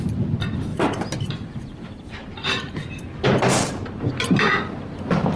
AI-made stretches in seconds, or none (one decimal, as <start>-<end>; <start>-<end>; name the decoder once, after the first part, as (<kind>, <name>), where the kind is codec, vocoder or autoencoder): 0.7-3.7 (vocoder, BigVGAN v2)